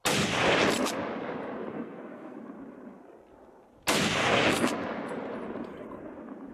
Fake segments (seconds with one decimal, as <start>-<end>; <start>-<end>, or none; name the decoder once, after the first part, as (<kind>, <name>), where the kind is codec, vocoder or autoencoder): 1.7-2.4 (codec, SNAC); 4.2-4.7